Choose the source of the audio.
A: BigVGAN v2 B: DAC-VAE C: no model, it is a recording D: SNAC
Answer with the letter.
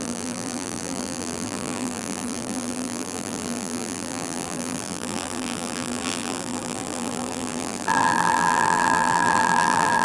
A